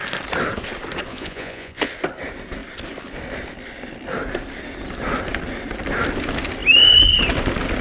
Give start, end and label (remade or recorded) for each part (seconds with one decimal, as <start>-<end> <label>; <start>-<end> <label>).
0.0-1.1 recorded; 1.1-1.9 remade; 1.9-7.8 recorded